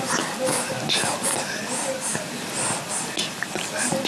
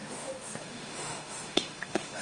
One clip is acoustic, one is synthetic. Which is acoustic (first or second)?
first